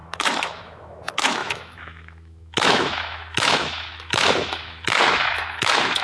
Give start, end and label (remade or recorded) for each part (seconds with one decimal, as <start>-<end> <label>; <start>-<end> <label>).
0.0-6.0 remade